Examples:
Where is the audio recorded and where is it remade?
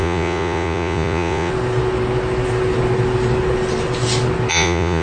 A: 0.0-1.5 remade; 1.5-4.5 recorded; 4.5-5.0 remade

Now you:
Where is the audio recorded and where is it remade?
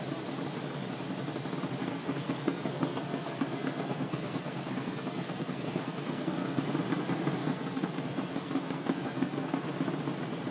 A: 0.0-1.8 recorded; 1.8-6.7 remade; 6.7-7.4 recorded; 7.4-9.7 remade; 9.7-10.5 recorded